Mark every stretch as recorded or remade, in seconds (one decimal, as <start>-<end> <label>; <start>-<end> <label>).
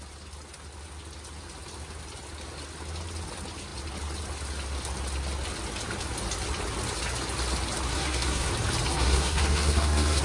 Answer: 0.0-7.9 recorded; 7.9-8.5 remade; 8.5-8.9 recorded; 8.9-10.2 remade